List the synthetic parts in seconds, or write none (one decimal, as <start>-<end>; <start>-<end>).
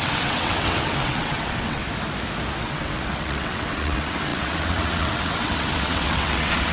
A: 0.0-1.8; 2.6-6.7